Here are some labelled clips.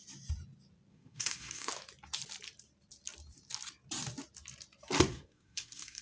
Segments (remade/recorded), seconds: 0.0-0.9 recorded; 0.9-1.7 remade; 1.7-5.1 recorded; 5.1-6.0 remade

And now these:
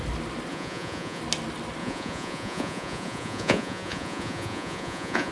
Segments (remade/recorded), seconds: 0.0-0.5 recorded; 0.5-1.2 remade; 1.2-1.8 recorded; 1.8-5.3 remade

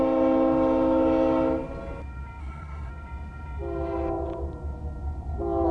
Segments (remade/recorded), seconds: 0.0-2.4 recorded; 2.4-2.9 remade; 2.9-5.7 recorded

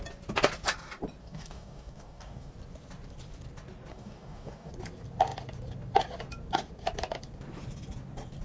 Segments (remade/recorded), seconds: 0.0-1.2 recorded; 1.2-2.5 remade; 2.5-3.9 recorded; 3.9-4.7 remade; 4.7-8.4 recorded

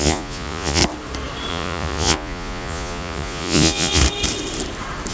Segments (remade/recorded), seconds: 0.0-0.8 remade; 0.8-1.5 recorded; 1.5-4.0 remade; 4.0-5.1 recorded